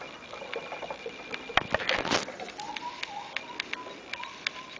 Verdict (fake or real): real